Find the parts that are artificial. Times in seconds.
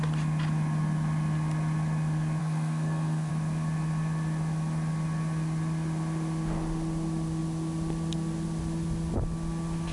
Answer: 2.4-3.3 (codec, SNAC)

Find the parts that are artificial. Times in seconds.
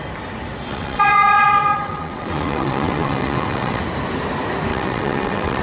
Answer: 0.7-3.8 (vocoder, WaveNeXt); 4.7-5.6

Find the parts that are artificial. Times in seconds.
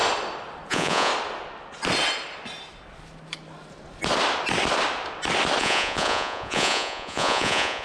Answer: 0.7-1.1 (vocoder, Vocos); 5.6-7.8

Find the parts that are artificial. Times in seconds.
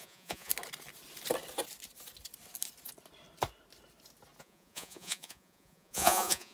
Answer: 0.0-0.5 (vocoder, Vocos); 4.4-6.5